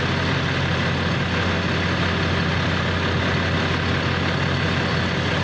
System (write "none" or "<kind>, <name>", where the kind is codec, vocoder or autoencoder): none